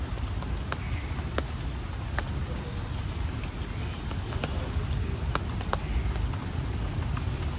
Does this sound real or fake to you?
real